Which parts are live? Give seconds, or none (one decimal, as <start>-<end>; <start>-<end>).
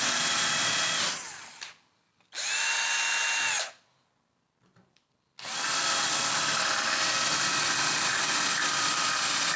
0.0-0.6; 1.1-9.6